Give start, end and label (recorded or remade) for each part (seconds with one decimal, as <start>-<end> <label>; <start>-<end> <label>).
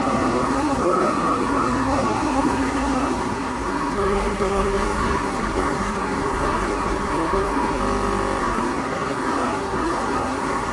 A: 0.0-7.8 remade; 7.8-8.4 recorded; 8.4-10.7 remade